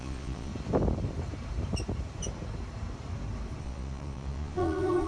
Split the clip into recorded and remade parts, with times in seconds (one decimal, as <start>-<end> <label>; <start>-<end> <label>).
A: 0.0-0.5 remade; 0.5-3.6 recorded; 3.6-5.1 remade